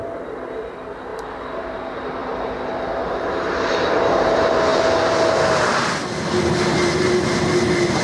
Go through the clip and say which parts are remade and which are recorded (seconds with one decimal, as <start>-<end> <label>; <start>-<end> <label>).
0.0-8.0 recorded